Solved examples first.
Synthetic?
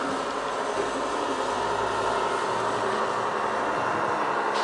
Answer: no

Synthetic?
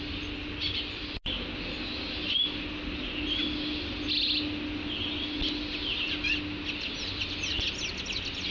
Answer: no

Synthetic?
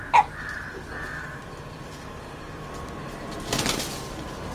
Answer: no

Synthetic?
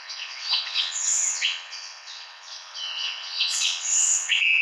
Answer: yes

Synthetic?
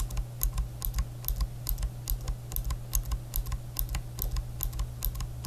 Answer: no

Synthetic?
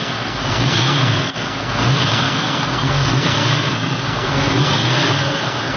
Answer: yes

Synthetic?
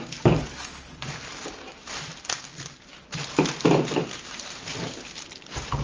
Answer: yes